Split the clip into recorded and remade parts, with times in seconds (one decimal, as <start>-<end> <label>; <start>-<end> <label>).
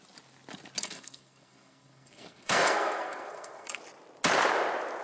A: 0.0-0.8 recorded; 0.8-3.8 remade; 3.8-5.0 recorded